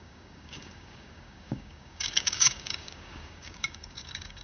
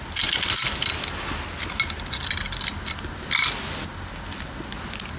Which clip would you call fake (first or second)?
first